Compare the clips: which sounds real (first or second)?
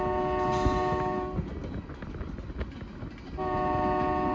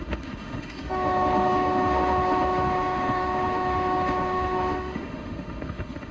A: first